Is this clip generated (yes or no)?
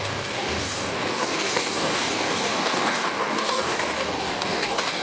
yes